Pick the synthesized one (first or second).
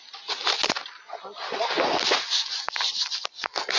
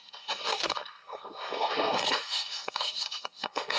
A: second